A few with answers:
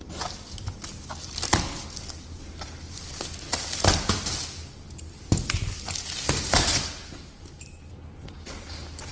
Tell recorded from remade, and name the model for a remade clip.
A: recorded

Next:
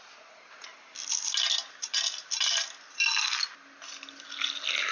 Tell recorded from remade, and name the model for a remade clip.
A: recorded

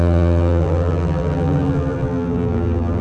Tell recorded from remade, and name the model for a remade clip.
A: remade, vocoder, BigVGAN v2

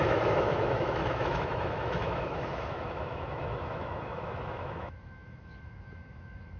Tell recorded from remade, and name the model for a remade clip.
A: remade, autoencoder, DAC-VAE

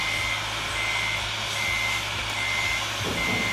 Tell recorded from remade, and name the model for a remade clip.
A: recorded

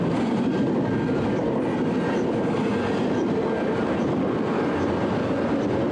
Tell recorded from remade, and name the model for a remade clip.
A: recorded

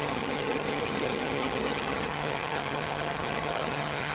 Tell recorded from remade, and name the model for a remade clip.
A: remade, vocoder, HiFi-GAN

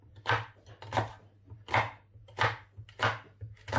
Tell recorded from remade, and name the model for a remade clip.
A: recorded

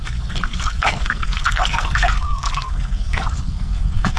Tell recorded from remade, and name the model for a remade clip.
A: remade, codec, SNAC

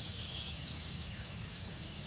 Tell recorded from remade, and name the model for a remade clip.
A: remade, codec, DAC